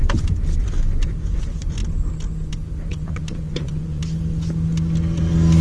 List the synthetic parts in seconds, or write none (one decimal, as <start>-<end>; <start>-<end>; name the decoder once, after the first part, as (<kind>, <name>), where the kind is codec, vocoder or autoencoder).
2.9-4.0 (vocoder, Vocos)